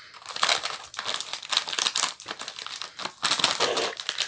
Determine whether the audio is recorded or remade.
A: recorded